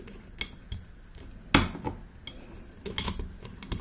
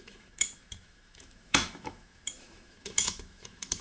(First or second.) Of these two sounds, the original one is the first